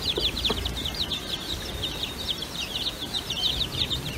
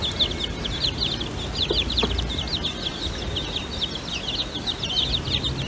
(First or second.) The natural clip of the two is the second